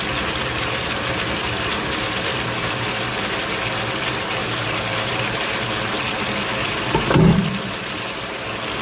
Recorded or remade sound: recorded